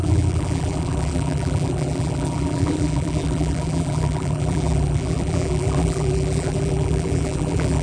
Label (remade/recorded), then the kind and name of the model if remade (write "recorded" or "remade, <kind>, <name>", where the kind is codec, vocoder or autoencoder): remade, vocoder, BigVGAN v2